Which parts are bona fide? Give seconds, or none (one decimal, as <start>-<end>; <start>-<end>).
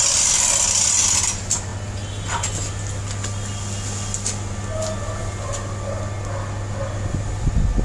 0.0-7.8